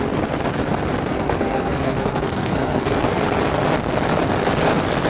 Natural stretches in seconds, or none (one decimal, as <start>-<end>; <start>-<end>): 0.0-1.1; 3.2-5.1